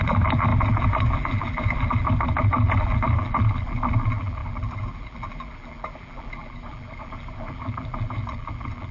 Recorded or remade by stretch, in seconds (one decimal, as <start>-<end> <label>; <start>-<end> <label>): 0.0-8.9 remade